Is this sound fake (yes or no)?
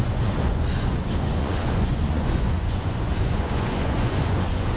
yes